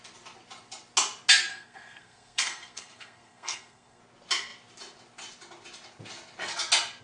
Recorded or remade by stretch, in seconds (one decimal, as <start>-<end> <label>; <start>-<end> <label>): 0.0-1.5 recorded; 1.5-4.0 remade; 4.0-7.0 recorded